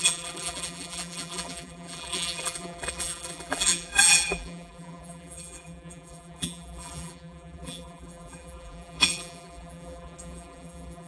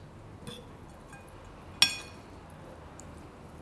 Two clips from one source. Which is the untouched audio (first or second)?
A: second